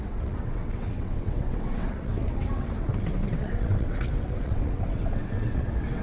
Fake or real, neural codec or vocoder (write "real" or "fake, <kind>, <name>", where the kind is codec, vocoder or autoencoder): fake, vocoder, WaveNeXt